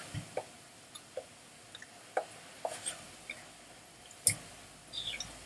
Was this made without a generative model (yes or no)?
yes